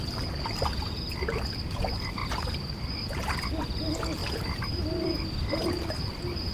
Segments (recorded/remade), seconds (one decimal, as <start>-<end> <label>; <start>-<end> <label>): 0.0-4.2 recorded; 4.2-5.7 remade; 5.7-6.5 recorded